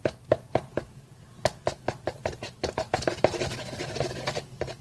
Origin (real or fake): real